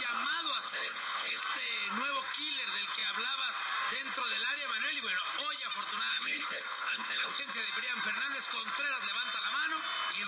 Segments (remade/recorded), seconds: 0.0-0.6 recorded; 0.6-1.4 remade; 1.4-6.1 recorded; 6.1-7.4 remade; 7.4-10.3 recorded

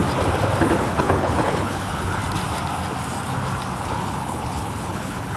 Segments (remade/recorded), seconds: 0.0-0.9 recorded; 0.9-2.2 remade; 2.2-3.8 recorded; 3.8-5.4 remade

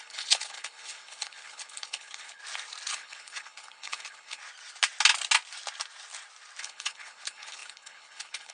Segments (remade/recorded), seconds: 0.0-2.4 remade; 2.4-2.9 recorded; 2.9-4.4 remade; 4.4-6.6 recorded; 6.6-8.5 remade